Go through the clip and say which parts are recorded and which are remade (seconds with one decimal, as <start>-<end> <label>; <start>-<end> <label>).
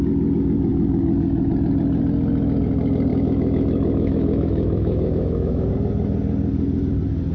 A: 0.0-3.1 recorded; 3.1-5.7 remade; 5.7-7.3 recorded